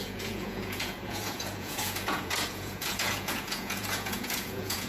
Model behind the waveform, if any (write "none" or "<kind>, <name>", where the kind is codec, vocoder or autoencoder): vocoder, Vocos